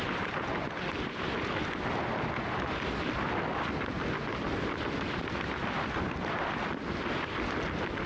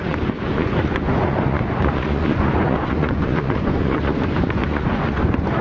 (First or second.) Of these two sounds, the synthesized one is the second